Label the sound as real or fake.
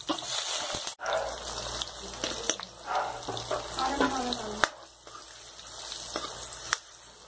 real